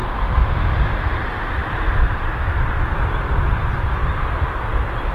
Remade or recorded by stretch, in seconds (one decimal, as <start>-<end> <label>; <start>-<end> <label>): 0.0-0.6 recorded; 0.6-5.1 remade